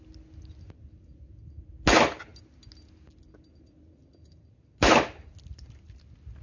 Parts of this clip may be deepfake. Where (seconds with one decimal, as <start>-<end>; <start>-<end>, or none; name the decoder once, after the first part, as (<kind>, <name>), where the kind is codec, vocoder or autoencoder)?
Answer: none